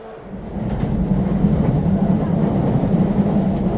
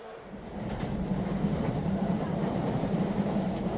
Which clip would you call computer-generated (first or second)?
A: second